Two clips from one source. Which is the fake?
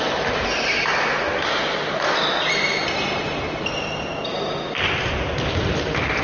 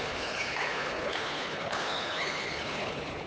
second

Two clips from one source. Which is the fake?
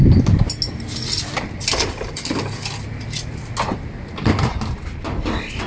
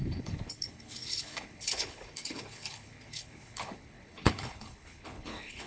second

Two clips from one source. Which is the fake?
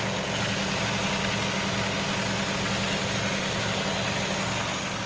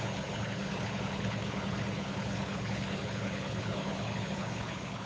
second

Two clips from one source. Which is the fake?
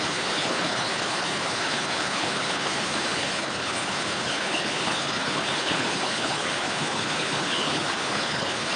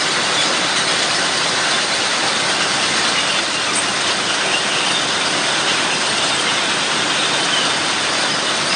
first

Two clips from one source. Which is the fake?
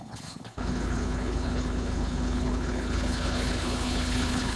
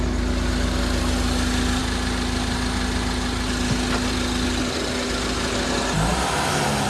first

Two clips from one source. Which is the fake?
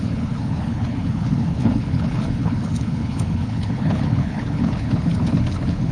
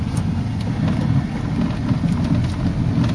first